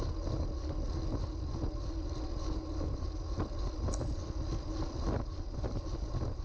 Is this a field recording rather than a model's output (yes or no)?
yes